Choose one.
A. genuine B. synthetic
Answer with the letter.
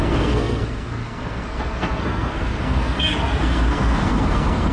B